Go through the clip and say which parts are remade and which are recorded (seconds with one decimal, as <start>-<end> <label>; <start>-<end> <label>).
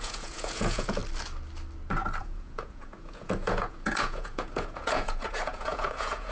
0.0-1.0 remade; 1.0-2.2 recorded; 2.2-6.3 remade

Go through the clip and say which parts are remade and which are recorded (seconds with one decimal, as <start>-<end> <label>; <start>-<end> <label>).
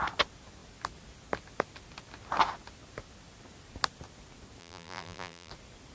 0.0-4.6 recorded; 4.6-5.5 remade; 5.5-5.9 recorded